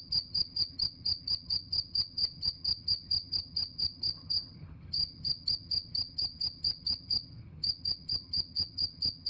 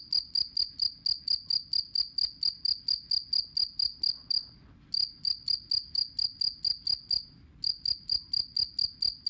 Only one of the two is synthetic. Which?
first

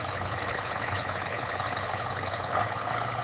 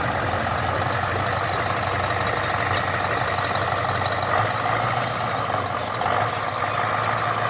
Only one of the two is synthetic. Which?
first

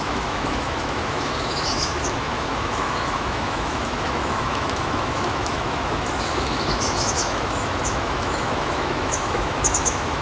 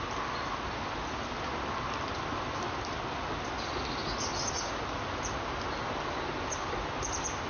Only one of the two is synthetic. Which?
first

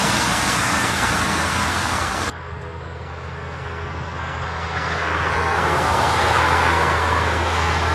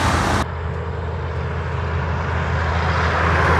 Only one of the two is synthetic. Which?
first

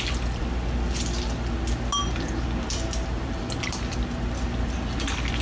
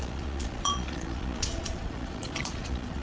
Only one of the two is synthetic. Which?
second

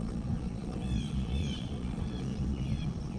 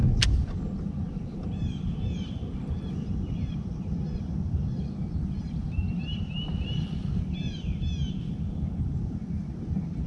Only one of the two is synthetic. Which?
first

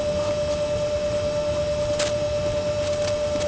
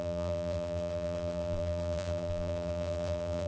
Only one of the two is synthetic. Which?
second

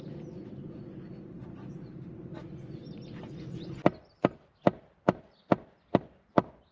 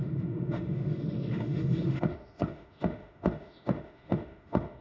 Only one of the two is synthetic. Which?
second